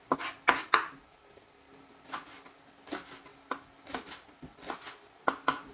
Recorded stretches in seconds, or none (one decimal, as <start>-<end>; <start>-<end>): 0.0-5.7